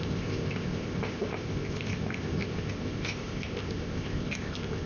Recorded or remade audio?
remade